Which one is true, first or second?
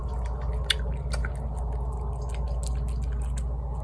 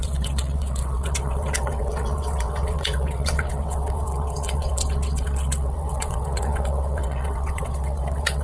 first